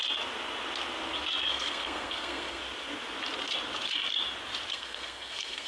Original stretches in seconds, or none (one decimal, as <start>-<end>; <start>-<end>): 0.0-1.5; 2.6-4.7